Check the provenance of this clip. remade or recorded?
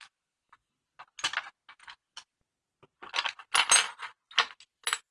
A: recorded